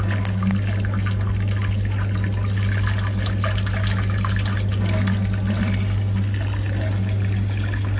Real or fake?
real